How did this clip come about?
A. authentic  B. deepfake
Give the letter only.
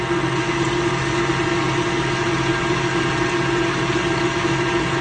A